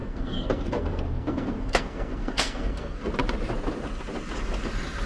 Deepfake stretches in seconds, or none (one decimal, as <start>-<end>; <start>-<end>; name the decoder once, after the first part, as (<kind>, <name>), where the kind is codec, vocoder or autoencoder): 0.0-3.1 (codec, SNAC)